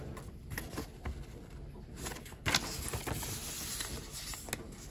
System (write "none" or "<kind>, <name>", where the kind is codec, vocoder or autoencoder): none